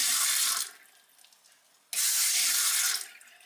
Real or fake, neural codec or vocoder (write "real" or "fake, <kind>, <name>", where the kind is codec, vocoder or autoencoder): real